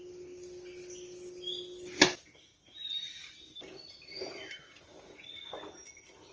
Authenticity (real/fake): real